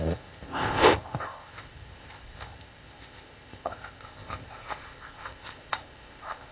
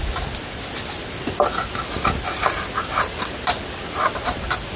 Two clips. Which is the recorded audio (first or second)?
second